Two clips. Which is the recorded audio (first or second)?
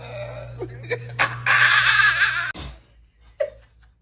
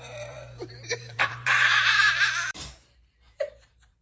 first